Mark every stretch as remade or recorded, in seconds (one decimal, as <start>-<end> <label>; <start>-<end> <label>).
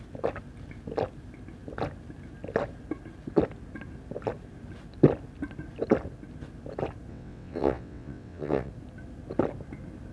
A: 0.0-7.1 recorded; 7.1-8.7 remade; 8.7-10.1 recorded